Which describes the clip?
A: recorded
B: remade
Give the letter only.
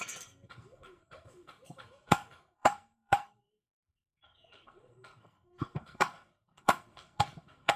B